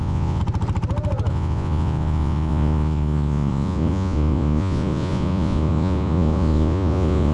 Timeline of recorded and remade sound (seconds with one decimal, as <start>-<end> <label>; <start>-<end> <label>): 0.0-0.4 remade; 0.4-1.3 recorded; 1.3-7.3 remade